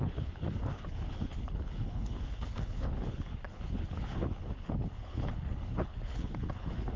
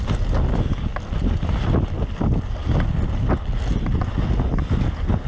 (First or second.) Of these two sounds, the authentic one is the second